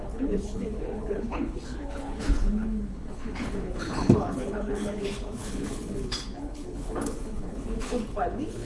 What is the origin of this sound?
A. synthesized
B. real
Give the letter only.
A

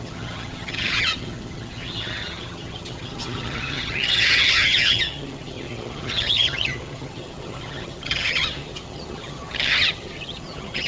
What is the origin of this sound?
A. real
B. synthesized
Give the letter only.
B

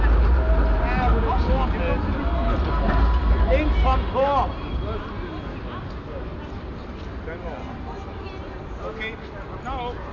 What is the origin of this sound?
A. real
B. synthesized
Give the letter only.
A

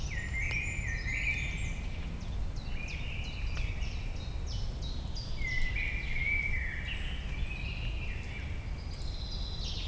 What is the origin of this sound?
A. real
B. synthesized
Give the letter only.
A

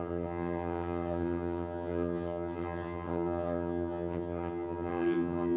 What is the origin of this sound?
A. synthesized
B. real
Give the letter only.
A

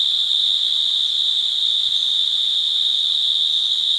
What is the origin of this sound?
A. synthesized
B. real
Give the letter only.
B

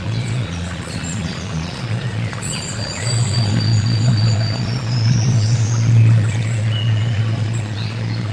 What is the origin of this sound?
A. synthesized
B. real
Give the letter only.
A